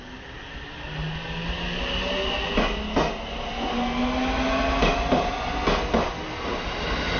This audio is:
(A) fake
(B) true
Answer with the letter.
B